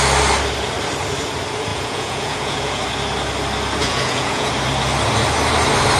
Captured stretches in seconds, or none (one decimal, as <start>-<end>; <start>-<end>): 0.0-1.7; 2.8-3.8; 4.5-6.0